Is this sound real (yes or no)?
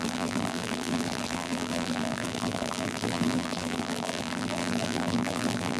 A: no